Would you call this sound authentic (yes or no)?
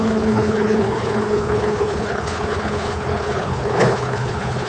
no